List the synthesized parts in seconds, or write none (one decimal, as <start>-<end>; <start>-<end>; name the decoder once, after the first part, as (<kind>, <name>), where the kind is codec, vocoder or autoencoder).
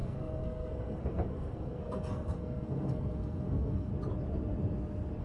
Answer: 0.0-3.9 (codec, SNAC)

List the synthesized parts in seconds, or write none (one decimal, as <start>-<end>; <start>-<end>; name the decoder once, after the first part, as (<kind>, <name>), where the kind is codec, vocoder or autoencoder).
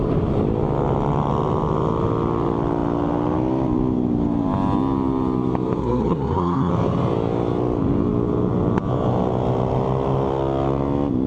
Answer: 5.8-6.7 (codec, SNAC)